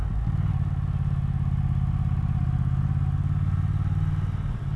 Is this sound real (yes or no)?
yes